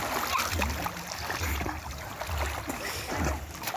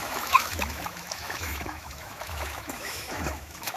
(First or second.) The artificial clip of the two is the second